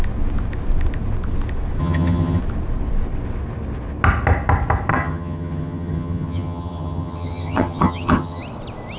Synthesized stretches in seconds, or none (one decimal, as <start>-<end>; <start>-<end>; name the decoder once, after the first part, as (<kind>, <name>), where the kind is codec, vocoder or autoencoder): 1.8-2.4 (vocoder, HiFi-GAN); 4.9-8.4